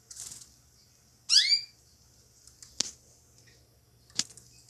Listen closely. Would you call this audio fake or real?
real